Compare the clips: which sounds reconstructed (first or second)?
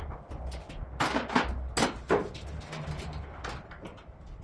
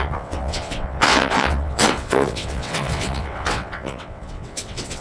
second